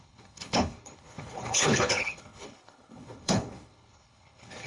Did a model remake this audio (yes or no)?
yes